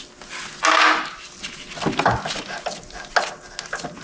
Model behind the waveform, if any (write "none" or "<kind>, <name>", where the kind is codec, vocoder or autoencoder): none